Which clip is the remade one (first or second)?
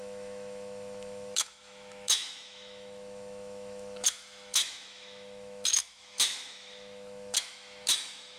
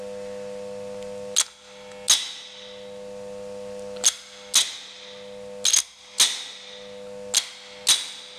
first